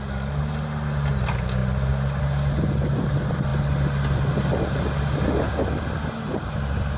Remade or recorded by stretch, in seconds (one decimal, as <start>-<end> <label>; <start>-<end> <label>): 0.0-7.0 recorded